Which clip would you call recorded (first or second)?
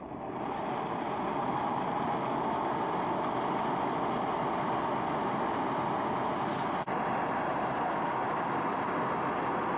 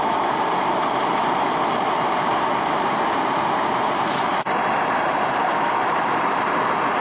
first